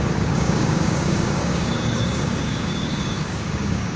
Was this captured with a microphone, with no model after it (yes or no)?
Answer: no